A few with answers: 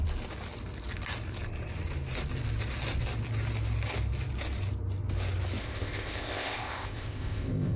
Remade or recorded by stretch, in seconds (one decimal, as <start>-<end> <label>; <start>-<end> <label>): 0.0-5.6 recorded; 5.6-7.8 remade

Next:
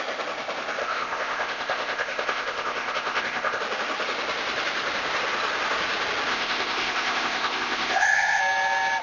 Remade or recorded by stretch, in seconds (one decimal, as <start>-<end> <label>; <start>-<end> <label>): 0.0-0.8 recorded; 0.8-3.6 remade; 3.6-6.3 recorded; 6.3-8.4 remade; 8.4-9.0 recorded

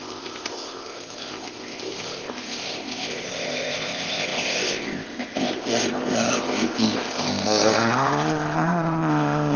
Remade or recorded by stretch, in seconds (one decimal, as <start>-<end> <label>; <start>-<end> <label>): 0.0-9.6 remade

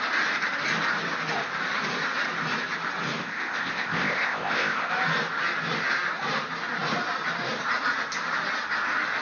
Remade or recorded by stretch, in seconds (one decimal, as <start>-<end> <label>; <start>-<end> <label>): 0.0-3.2 recorded; 3.2-4.9 remade; 4.9-9.2 recorded

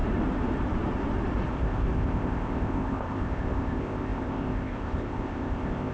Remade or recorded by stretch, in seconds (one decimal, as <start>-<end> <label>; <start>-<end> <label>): 0.0-1.5 recorded; 1.5-5.9 remade

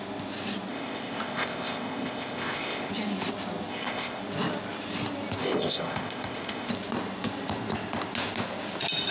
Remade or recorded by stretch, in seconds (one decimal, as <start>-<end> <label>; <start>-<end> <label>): 0.0-0.7 recorded; 0.7-2.9 remade; 2.9-3.7 recorded; 3.7-4.2 remade; 4.2-5.4 recorded; 5.4-6.7 remade; 6.7-9.1 recorded